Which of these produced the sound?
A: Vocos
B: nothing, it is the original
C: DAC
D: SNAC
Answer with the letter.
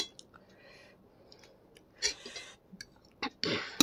B